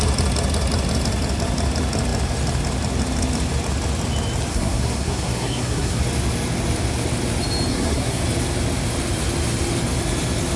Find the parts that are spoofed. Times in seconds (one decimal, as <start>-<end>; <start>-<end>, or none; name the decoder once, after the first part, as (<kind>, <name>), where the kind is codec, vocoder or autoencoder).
4.5-6.0 (codec, SNAC); 7.7-8.2